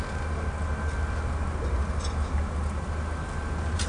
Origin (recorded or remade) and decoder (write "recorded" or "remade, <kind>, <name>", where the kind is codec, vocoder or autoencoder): recorded